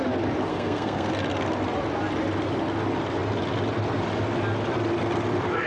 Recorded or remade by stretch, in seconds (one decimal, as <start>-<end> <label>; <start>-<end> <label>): 0.0-0.5 recorded; 0.5-1.1 remade; 1.1-5.7 recorded